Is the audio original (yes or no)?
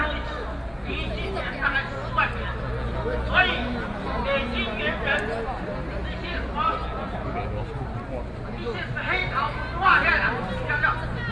yes